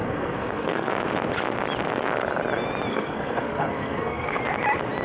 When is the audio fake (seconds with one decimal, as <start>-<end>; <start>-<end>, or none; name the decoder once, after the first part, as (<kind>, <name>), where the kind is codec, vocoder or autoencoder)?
0.0-0.9 (codec, SNAC); 2.9-4.4